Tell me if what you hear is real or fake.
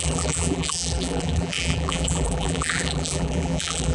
fake